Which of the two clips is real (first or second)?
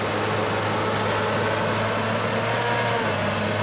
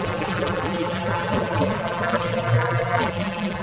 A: first